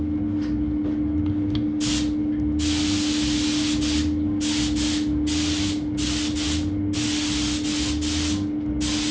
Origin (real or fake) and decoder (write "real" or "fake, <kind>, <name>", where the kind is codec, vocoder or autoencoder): real